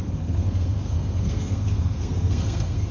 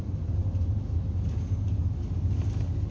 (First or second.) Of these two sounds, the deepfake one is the first